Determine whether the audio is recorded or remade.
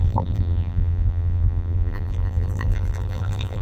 remade